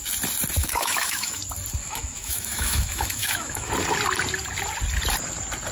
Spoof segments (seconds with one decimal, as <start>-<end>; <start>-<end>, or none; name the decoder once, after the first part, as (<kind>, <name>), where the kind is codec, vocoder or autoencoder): 0.6-1.4 (autoencoder, DAC-VAE); 1.8-3.7